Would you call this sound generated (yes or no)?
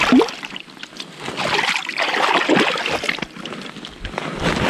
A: no